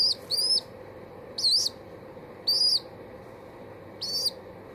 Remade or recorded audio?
recorded